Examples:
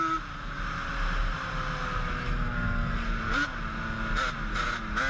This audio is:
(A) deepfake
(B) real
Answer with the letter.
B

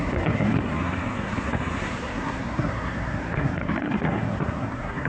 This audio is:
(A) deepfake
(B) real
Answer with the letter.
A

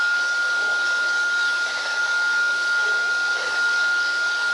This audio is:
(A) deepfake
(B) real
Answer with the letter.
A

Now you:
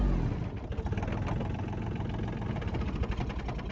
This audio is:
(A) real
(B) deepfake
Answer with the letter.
A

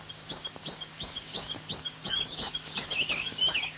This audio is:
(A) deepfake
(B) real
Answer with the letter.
A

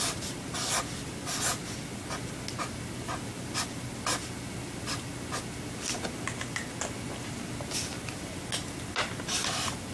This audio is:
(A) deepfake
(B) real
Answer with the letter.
B